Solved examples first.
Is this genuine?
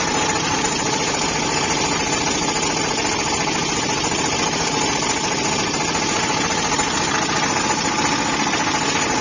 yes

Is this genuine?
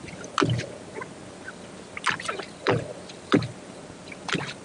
yes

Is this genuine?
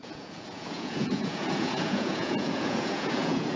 no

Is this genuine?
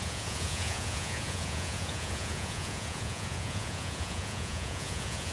no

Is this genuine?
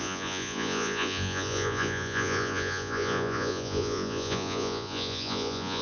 no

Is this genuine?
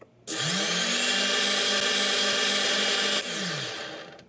yes